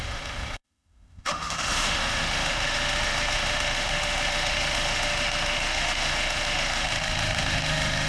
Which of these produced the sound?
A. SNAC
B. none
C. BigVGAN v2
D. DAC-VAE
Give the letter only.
D